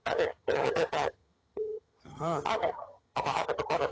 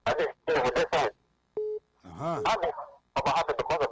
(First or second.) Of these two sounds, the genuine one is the second